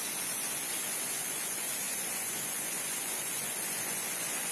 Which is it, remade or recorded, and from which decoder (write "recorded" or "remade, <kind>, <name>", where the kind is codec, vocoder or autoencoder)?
remade, vocoder, Vocos